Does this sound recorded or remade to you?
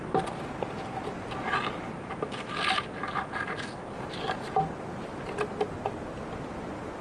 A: recorded